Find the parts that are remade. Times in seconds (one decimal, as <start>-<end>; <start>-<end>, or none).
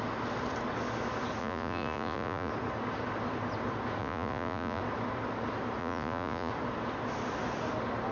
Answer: 1.4-2.5; 4.0-4.8; 5.8-6.5